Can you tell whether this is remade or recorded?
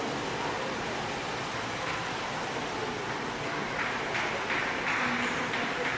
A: recorded